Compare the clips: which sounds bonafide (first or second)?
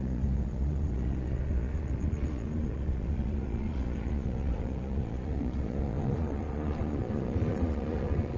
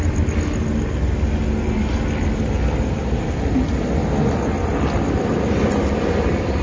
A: second